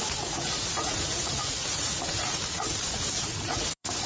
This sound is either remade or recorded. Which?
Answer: remade